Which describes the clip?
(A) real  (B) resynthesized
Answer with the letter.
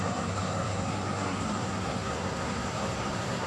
B